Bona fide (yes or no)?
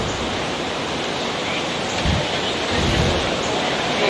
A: yes